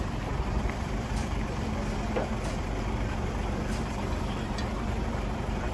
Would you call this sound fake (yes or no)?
yes